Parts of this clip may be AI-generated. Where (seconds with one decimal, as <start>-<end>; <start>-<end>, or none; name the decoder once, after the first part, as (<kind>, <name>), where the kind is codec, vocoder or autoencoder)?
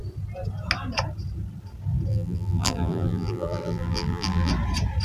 2.1-4.5 (vocoder, BigVGAN v2)